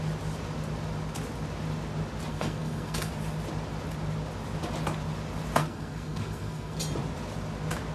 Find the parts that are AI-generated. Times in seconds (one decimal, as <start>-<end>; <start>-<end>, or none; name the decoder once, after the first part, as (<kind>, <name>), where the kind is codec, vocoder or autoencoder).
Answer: 2.3-3.1 (codec, SNAC); 5.6-6.8